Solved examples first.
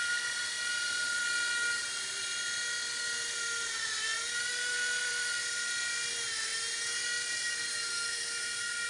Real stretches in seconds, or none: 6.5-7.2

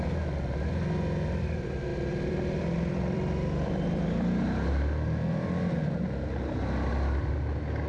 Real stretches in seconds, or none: 0.0-1.9; 4.7-7.9

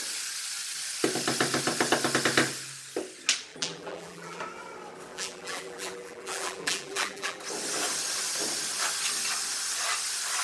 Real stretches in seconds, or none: 0.0-3.5; 4.4-5.1; 7.4-10.4